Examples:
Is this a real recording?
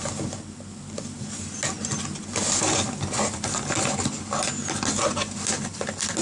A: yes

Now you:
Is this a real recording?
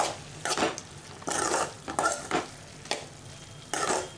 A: yes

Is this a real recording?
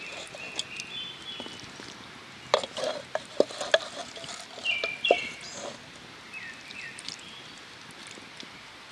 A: yes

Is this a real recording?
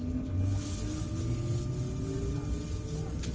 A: yes